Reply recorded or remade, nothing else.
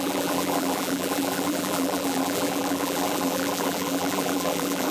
remade